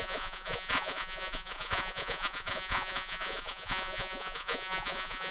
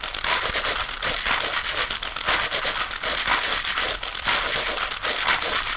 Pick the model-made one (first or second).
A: first